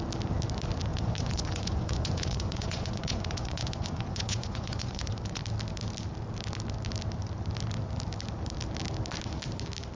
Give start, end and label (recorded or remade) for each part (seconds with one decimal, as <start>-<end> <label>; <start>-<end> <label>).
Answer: 0.0-0.9 recorded; 0.9-5.4 remade; 5.4-9.9 recorded